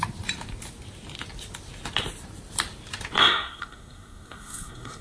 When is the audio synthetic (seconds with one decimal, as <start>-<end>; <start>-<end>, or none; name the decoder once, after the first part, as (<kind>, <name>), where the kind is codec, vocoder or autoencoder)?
3.2-5.0 (codec, SNAC)